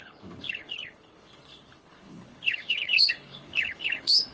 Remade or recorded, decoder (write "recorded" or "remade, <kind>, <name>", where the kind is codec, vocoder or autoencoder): remade, codec, HILCodec